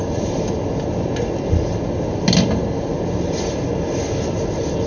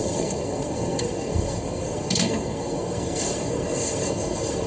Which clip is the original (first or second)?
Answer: first